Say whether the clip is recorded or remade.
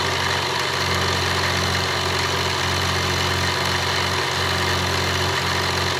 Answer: recorded